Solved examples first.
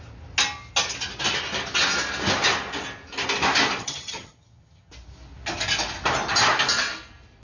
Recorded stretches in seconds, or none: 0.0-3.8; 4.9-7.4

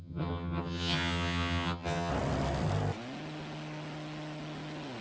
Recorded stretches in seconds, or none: 2.1-5.0

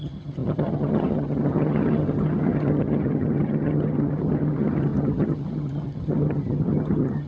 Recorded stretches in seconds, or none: none

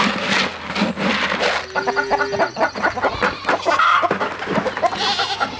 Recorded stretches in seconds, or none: 0.0-5.6

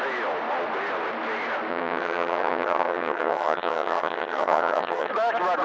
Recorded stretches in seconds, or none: 0.0-1.7; 5.1-5.6

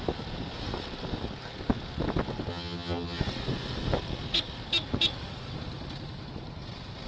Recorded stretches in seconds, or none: 0.0-2.5; 3.2-7.1

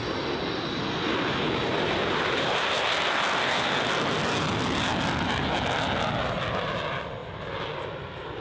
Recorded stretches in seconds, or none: 0.0-8.4